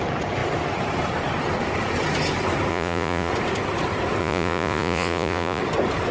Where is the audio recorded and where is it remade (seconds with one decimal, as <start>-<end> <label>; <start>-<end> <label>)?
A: 0.0-2.7 recorded; 2.7-3.3 remade; 3.3-4.2 recorded; 4.2-5.6 remade; 5.6-6.1 recorded